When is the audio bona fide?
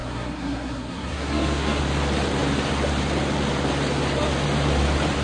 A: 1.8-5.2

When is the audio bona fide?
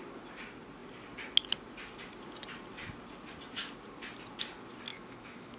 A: 0.0-4.9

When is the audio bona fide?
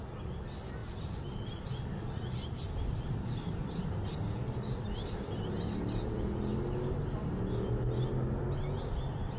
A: 0.0-0.8; 5.4-9.4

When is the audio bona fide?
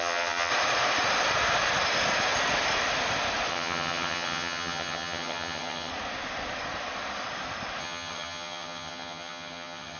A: 0.5-3.5; 5.9-7.8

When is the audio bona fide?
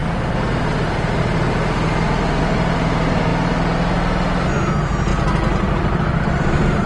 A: 0.0-5.1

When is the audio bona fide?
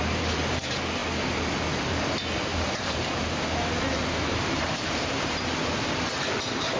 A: 0.0-2.5; 5.4-6.8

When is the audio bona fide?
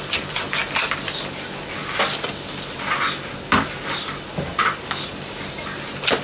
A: 0.0-6.2